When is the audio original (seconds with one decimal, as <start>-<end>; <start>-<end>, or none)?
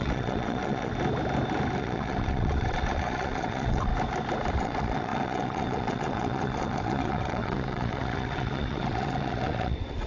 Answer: 0.9-1.8; 3.9-4.5